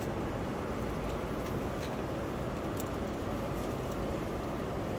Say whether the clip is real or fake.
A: real